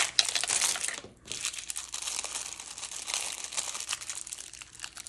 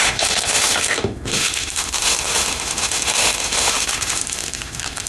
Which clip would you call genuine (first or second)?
first